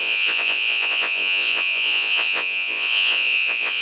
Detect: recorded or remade remade